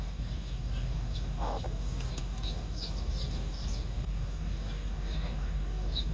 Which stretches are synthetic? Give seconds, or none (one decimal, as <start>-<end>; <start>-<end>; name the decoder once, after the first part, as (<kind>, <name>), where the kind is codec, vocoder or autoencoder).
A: 0.0-6.1 (codec, DAC)